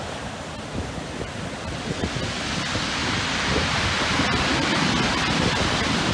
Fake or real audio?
real